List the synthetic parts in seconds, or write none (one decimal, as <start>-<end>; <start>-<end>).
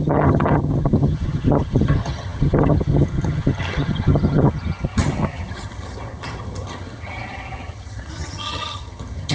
0.0-9.3